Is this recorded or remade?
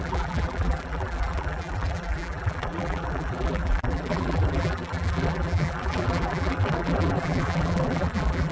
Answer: remade